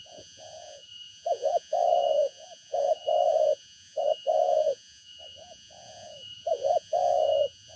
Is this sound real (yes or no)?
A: no